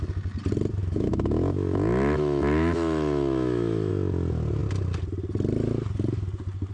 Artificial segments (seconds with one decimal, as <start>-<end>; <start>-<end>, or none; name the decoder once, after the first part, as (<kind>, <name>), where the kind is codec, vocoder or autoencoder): 0.8-3.9 (autoencoder, DAC-VAE)